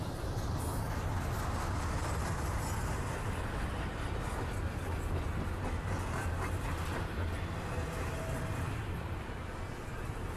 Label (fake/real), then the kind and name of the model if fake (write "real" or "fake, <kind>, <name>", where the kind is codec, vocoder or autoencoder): real